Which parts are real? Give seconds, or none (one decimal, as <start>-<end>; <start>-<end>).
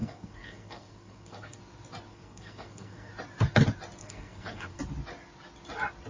1.6-2.1; 3.1-4.0; 4.8-6.1